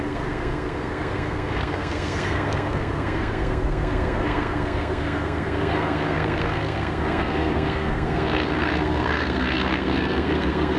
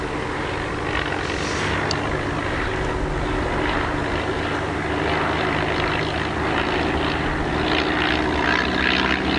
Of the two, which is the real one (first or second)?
second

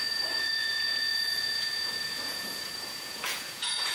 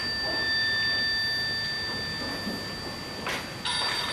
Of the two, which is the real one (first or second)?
second